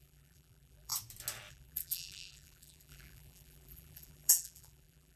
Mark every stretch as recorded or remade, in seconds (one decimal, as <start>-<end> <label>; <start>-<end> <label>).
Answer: 0.0-0.9 remade; 0.9-1.5 recorded; 1.5-5.2 remade